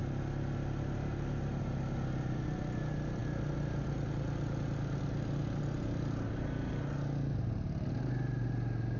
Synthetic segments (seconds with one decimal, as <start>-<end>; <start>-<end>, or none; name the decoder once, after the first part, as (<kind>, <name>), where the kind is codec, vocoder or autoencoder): none

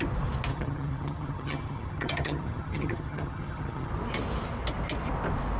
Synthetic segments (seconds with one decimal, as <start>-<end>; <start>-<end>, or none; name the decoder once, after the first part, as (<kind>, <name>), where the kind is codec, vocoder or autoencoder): 0.5-3.9 (vocoder, HiFi-GAN)

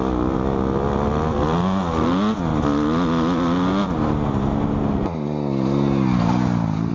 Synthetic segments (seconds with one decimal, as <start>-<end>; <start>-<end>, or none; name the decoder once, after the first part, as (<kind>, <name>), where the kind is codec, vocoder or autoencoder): none

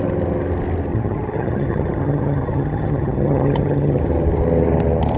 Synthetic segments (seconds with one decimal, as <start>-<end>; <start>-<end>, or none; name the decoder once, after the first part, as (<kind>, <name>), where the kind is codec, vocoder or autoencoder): 0.9-4.0 (vocoder, HiFi-GAN)